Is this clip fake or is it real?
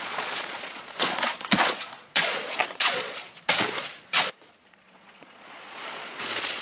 fake